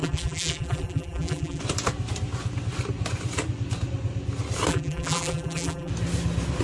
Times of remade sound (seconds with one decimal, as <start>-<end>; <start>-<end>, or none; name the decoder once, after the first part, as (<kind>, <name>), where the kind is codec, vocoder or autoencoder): 0.0-1.6 (vocoder, BigVGAN v2); 4.7-5.9